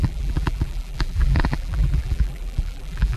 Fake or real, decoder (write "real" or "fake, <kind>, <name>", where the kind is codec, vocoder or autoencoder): fake, vocoder, BigVGAN v2